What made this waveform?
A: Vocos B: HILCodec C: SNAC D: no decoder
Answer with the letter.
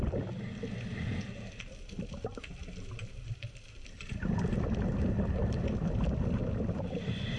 D